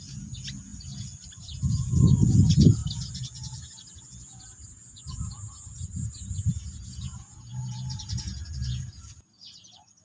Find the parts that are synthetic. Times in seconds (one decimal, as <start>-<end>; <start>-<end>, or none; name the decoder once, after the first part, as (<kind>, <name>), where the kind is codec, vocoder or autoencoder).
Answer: 0.0-0.7 (vocoder, Vocos); 1.4-10.0